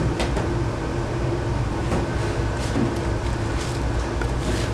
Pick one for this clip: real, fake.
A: real